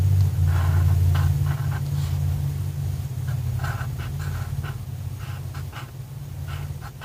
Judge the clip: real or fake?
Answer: real